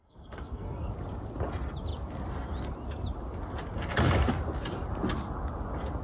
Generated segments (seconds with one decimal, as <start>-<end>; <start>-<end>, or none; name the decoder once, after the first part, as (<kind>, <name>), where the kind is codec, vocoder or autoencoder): 0.0-0.9 (codec, SNAC)